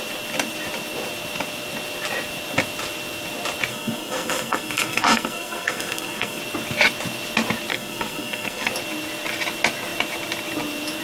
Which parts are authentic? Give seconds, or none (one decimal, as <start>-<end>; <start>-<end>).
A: 0.0-3.7; 6.4-7.7; 8.7-11.0